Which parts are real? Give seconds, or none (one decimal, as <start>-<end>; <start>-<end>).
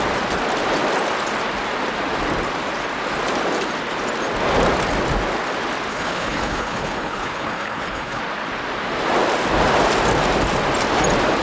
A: 0.0-5.9; 8.2-11.4